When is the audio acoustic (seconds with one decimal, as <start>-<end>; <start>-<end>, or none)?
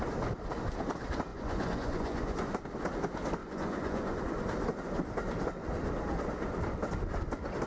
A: 0.0-1.3; 2.5-3.4; 4.2-7.7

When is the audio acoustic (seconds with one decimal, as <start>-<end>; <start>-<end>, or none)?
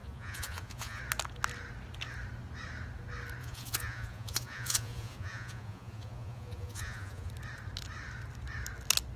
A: 1.0-3.4; 7.3-9.2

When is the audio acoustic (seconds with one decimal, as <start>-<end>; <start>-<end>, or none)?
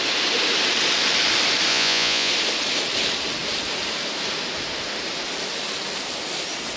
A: 0.0-1.7; 2.3-6.8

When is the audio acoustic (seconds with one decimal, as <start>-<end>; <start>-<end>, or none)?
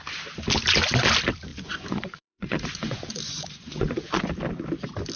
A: 0.0-1.5; 4.2-5.2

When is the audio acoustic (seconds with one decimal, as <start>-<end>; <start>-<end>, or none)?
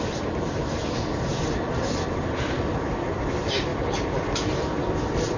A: 0.0-5.4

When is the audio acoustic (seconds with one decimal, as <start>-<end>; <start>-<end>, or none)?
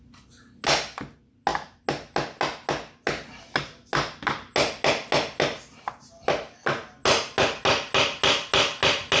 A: 0.0-9.2